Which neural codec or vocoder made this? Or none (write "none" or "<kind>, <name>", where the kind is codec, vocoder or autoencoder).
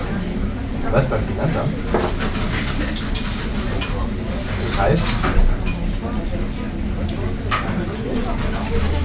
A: none